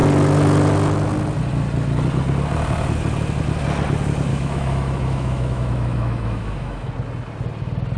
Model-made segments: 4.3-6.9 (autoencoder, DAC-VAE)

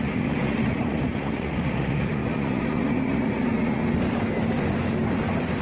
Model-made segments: 0.0-3.8 (vocoder, Vocos)

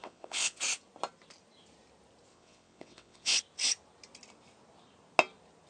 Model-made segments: 0.0-0.6 (vocoder, WaveNeXt); 2.3-3.4

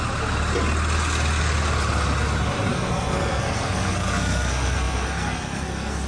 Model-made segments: 2.7-6.1 (codec, SNAC)

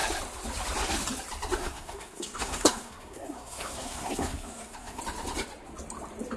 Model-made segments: 1.6-5.0 (codec, SNAC)

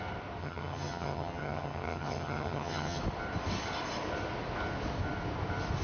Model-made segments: 0.4-3.0 (vocoder, HiFi-GAN)

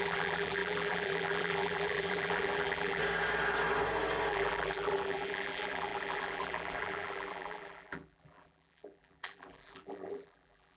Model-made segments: 0.0-3.0 (vocoder, BigVGAN v2); 4.3-10.8